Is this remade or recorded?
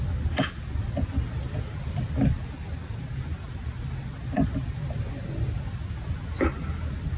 recorded